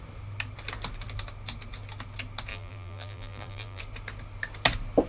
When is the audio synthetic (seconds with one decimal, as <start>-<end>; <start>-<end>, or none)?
2.5-3.8